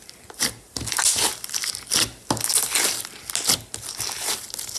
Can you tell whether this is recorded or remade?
recorded